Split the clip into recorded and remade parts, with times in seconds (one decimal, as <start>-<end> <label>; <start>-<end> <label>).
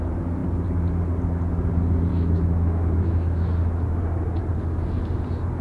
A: 0.0-2.1 recorded; 2.1-4.0 remade; 4.0-5.6 recorded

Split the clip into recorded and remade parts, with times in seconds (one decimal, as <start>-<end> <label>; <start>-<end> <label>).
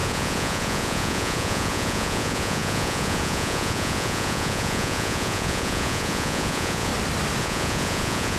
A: 0.0-6.9 remade; 6.9-7.4 recorded; 7.4-8.4 remade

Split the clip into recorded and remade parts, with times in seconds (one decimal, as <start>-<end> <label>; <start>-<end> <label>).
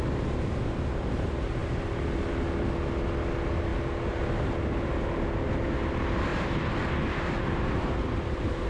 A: 0.0-8.7 recorded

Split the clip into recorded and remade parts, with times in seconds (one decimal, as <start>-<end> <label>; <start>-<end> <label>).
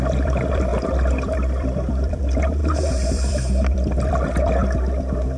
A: 0.0-2.6 remade; 2.6-3.1 recorded; 3.1-4.6 remade; 4.6-5.4 recorded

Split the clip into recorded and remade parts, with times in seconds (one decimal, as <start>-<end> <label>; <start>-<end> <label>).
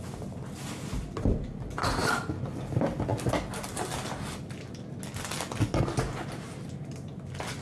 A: 0.0-7.6 recorded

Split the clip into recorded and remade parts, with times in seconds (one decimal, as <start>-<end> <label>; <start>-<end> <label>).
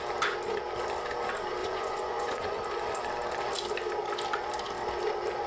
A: 0.0-1.6 recorded; 1.6-2.5 remade; 2.5-5.5 recorded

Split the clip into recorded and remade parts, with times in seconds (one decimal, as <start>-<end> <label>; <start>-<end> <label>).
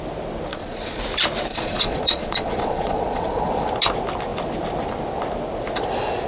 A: 0.0-0.5 recorded; 0.5-1.0 remade; 1.0-1.5 recorded; 1.5-3.7 remade; 3.7-6.3 recorded